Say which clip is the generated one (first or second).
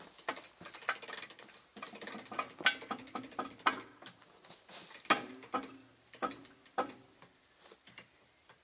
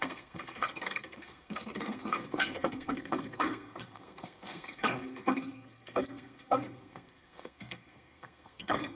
second